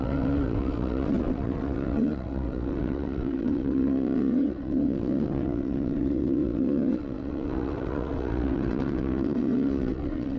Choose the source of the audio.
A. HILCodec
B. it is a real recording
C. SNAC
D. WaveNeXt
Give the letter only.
D